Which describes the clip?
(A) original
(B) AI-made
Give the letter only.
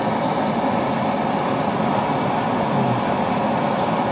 A